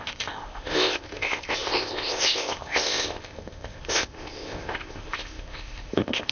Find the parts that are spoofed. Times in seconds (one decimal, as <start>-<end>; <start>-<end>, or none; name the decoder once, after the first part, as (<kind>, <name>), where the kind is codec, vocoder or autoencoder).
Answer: 0.0-6.3 (codec, ZipCodec)